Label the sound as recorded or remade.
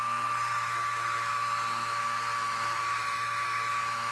remade